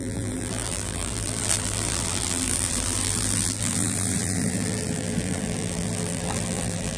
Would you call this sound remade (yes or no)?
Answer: yes